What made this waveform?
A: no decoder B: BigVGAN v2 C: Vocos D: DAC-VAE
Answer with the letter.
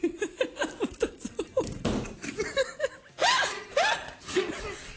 A